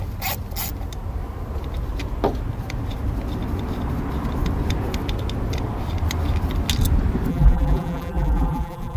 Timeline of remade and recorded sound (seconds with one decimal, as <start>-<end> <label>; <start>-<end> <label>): 0.0-7.3 recorded; 7.3-9.0 remade